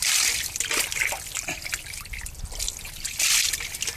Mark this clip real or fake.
real